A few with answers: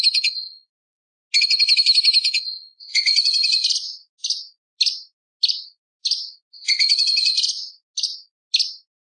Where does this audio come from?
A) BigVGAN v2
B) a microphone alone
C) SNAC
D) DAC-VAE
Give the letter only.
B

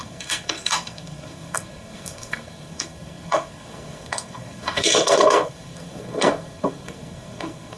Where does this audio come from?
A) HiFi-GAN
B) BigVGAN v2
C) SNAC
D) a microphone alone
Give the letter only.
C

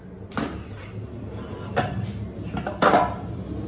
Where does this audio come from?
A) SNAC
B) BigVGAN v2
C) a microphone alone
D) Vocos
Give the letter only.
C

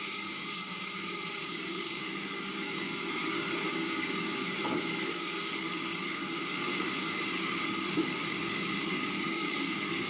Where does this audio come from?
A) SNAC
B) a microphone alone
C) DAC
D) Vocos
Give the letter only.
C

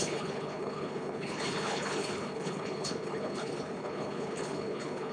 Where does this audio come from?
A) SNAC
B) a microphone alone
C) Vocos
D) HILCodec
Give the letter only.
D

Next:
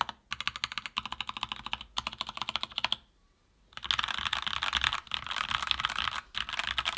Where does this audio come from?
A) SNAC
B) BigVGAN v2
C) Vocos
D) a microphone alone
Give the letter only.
D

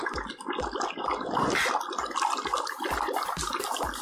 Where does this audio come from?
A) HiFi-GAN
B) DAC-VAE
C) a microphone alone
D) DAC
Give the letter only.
C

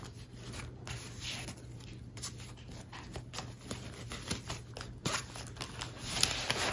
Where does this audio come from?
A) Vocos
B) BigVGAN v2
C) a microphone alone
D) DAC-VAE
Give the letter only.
C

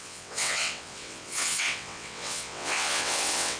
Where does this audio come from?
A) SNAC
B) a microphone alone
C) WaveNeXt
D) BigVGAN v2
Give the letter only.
C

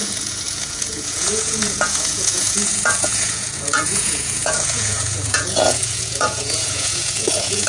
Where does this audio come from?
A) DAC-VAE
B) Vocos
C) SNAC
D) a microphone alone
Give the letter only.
B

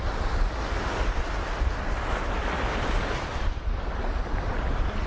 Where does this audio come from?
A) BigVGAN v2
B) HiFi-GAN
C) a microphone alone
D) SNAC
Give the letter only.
C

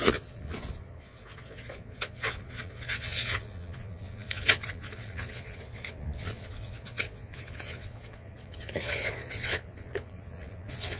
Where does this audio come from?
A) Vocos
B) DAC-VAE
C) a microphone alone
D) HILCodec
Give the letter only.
A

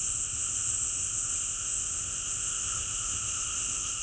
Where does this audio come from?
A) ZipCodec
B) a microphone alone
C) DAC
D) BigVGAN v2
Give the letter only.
A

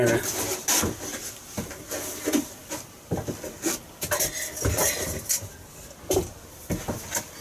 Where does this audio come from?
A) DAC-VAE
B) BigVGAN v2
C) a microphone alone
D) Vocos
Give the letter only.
C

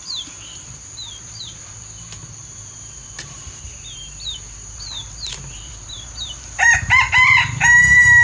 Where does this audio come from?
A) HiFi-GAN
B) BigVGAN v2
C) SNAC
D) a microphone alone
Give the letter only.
B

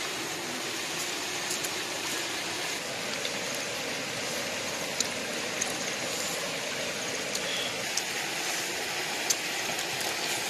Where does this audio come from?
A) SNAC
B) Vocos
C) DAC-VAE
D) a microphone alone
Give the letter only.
D